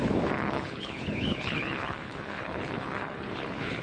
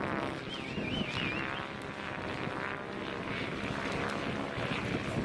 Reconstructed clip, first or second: first